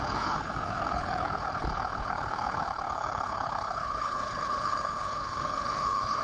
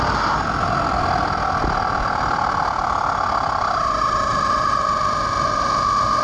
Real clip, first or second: second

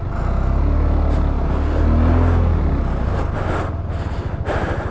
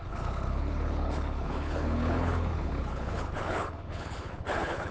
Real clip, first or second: first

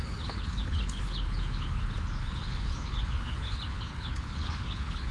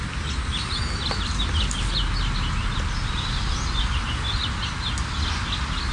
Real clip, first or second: second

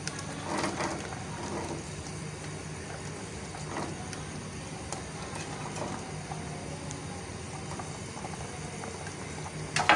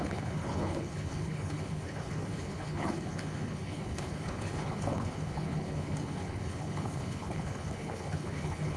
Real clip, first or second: first